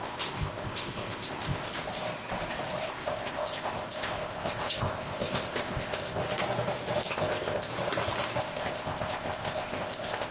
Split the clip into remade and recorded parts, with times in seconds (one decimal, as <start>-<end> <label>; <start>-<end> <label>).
0.0-1.7 remade; 1.7-2.8 recorded; 2.8-6.2 remade; 6.2-7.1 recorded; 7.1-7.7 remade; 7.7-8.4 recorded; 8.4-10.3 remade